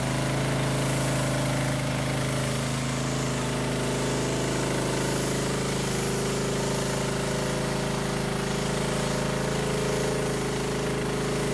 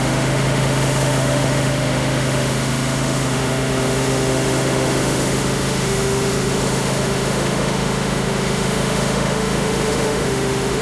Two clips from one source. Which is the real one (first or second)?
first